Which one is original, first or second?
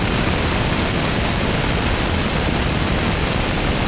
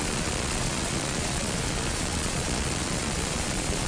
first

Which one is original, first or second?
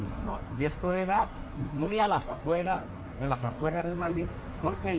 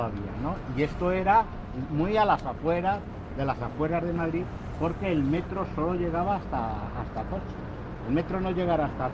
second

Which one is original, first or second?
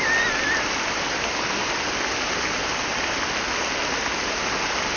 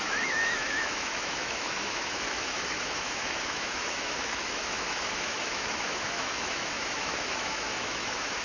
first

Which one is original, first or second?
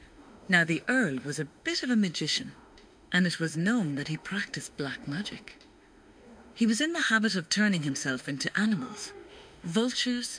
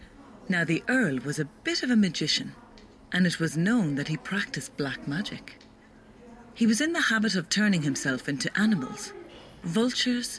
second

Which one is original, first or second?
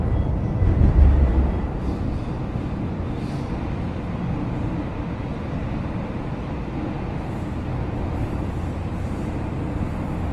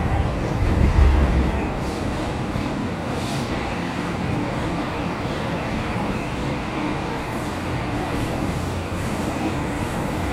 first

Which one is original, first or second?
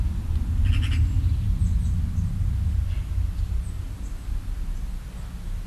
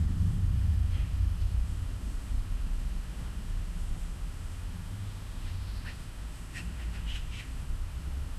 first